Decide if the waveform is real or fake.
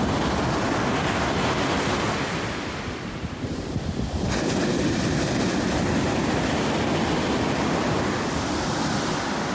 real